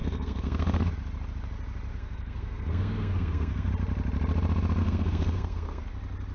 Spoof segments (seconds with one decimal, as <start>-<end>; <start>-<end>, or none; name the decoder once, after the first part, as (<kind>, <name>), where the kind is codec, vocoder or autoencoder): 0.0-0.9 (codec, SNAC); 1.9-3.7; 4.8-5.8